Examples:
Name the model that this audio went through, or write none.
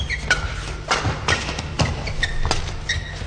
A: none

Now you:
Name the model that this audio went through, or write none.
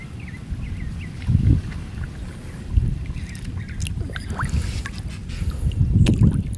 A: none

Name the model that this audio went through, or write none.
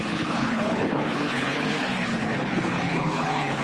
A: codec, HILCodec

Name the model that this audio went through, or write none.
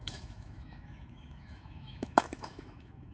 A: autoencoder, DAC-VAE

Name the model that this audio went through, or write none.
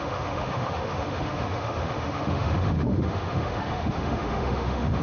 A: autoencoder, DAC-VAE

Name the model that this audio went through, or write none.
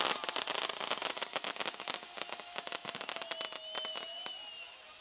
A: none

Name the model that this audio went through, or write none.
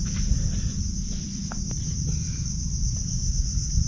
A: vocoder, BigVGAN v2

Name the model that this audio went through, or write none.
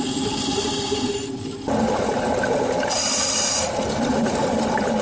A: none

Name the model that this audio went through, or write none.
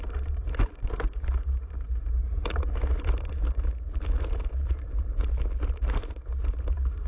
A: vocoder, BigVGAN v2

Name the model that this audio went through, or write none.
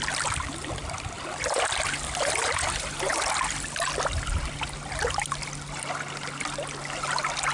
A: none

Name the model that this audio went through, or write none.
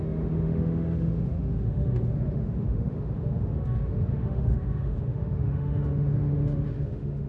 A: autoencoder, DAC-VAE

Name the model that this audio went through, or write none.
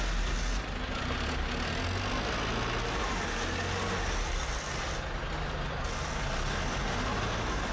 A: none